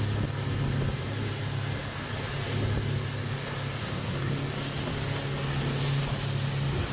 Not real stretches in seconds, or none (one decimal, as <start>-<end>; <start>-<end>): 3.8-4.3